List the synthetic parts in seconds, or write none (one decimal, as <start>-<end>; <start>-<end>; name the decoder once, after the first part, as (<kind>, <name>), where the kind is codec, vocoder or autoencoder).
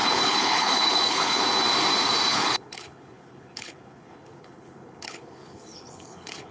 0.0-1.4 (codec, HILCodec); 2.3-6.5